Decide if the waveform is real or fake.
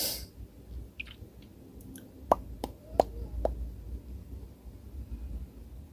real